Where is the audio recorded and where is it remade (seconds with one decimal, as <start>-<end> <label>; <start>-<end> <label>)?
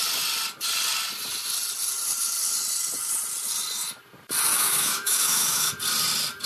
0.0-4.5 recorded; 4.5-5.7 remade; 5.7-6.5 recorded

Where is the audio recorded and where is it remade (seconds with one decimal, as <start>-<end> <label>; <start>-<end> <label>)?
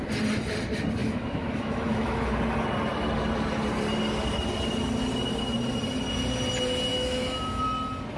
0.0-1.0 recorded; 1.0-2.3 remade; 2.3-6.9 recorded; 6.9-7.6 remade; 7.6-8.2 recorded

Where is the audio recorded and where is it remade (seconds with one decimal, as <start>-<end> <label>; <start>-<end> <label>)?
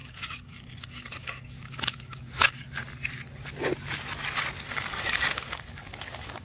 0.0-2.8 remade; 2.8-4.7 recorded; 4.7-6.4 remade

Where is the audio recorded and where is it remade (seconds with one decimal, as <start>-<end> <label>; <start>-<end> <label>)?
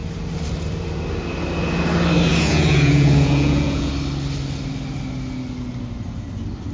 0.0-2.3 recorded; 2.3-3.9 remade; 3.9-6.7 recorded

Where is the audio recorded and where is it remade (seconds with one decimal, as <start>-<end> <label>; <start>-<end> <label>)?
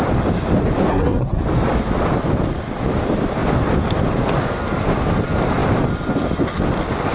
0.0-0.9 recorded; 0.9-1.4 remade; 1.4-7.1 recorded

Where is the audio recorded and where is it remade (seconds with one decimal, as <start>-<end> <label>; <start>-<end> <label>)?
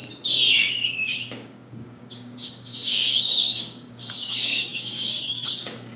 0.0-0.5 recorded; 0.5-6.0 remade